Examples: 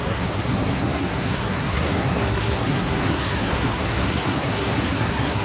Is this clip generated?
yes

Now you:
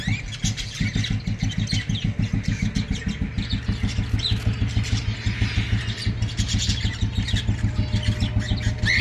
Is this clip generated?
no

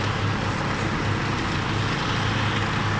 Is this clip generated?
no